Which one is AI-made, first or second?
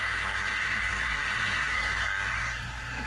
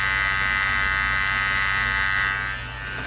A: first